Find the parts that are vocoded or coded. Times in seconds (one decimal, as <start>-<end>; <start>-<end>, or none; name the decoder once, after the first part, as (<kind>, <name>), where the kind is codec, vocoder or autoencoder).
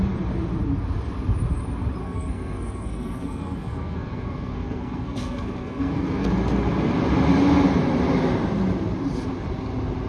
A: 2.0-6.3 (codec, SNAC)